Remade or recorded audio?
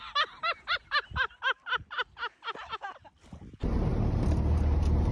recorded